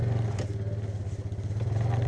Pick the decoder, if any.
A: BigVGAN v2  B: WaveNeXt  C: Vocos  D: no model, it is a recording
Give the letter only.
D